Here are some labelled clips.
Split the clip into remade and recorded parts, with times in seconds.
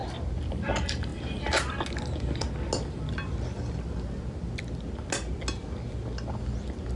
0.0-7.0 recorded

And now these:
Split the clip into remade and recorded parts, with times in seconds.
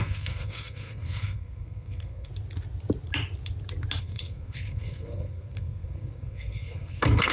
0.0-2.3 remade; 2.3-4.0 recorded; 4.0-7.3 remade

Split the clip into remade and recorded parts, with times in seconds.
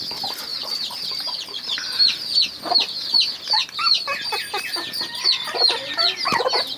0.0-0.5 recorded; 0.5-2.4 remade; 2.4-6.8 recorded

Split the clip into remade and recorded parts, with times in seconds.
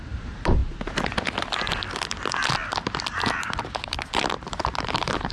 0.0-0.6 remade; 0.6-3.4 recorded; 3.4-5.3 remade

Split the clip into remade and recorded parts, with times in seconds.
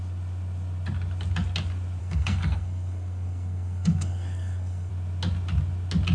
0.0-2.0 recorded; 2.0-4.9 remade; 4.9-6.1 recorded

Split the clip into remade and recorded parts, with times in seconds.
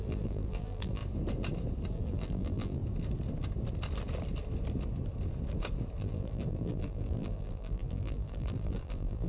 0.0-1.0 remade; 1.0-1.9 recorded; 1.9-2.8 remade; 2.8-6.0 recorded; 6.0-9.3 remade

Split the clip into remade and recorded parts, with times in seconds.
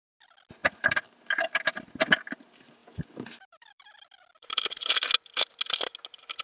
0.0-0.6 recorded; 0.6-1.8 remade; 1.8-2.8 recorded; 2.8-5.0 remade; 5.0-6.4 recorded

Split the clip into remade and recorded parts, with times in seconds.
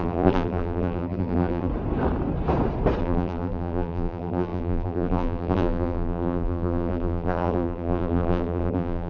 0.0-1.7 remade; 1.7-3.0 recorded; 3.0-9.1 remade